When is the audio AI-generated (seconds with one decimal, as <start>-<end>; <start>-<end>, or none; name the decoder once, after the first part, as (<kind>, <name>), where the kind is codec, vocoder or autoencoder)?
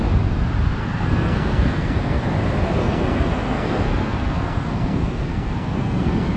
0.8-2.2 (codec, SNAC); 2.8-6.4